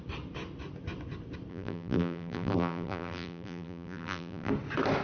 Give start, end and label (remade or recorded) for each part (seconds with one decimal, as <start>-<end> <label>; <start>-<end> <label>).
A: 0.0-1.5 recorded; 1.5-4.5 remade; 4.5-5.0 recorded